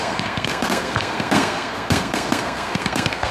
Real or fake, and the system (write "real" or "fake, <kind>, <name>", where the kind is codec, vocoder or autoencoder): fake, codec, SNAC